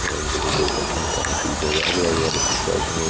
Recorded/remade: recorded